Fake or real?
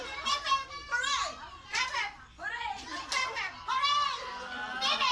real